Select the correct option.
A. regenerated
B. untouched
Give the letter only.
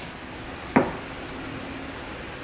B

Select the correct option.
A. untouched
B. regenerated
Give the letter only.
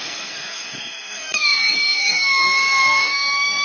B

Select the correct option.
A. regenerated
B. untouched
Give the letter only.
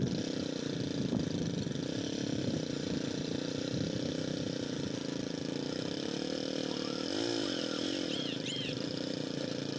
A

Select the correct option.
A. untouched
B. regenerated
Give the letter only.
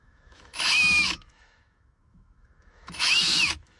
B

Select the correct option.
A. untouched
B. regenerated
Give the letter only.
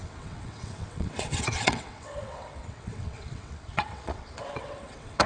B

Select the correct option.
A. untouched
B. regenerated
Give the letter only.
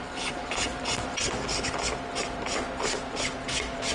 A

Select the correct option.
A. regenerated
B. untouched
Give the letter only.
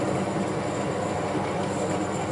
B